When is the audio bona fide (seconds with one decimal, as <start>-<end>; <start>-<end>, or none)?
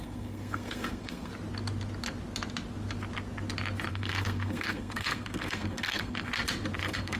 1.3-3.9; 6.3-6.8